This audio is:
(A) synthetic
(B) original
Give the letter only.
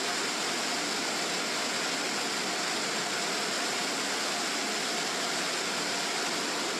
B